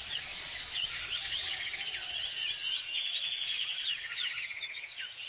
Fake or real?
fake